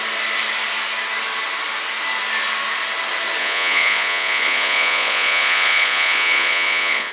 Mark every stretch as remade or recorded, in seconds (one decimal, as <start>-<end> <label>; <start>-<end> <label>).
0.0-3.4 recorded; 3.4-7.1 remade